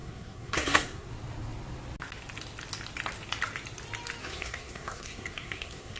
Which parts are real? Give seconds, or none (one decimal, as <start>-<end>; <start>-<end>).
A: 1.1-4.2